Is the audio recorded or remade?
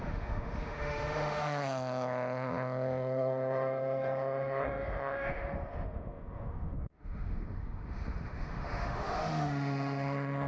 remade